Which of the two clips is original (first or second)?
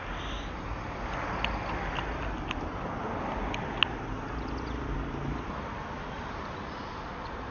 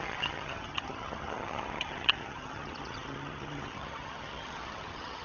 first